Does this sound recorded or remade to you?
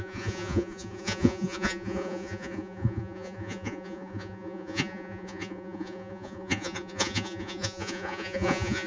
remade